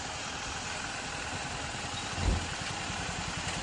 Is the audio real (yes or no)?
yes